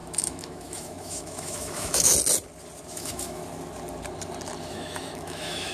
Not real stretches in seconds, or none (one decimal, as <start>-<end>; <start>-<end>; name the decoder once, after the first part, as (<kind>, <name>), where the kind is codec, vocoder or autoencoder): 0.0-2.1 (autoencoder, DAC-VAE); 2.9-3.4; 4.6-5.7